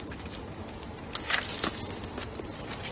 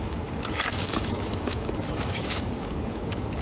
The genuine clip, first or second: first